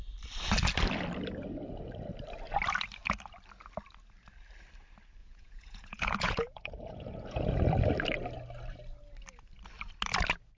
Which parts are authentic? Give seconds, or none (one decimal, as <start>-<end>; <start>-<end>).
0.0-5.2; 7.6-10.6